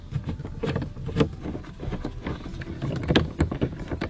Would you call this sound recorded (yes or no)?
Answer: yes